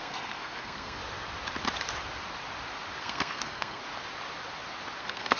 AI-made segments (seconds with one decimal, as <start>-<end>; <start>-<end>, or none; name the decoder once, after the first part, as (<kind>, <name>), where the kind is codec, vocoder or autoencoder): 0.0-1.0 (codec, SNAC); 3.0-3.8; 5.0-5.4